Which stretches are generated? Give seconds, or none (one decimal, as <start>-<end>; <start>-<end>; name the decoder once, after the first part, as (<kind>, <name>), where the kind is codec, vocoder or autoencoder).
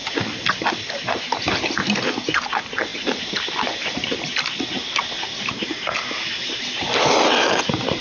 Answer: none